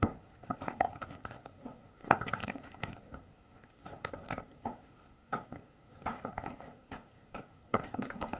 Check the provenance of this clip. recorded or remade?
remade